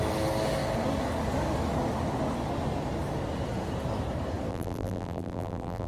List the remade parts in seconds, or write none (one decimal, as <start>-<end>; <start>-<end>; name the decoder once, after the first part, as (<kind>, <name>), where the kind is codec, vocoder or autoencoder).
4.5-5.9 (vocoder, BigVGAN v2)